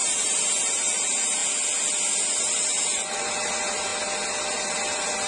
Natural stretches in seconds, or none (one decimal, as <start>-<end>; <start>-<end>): 1.4-2.4; 3.9-4.5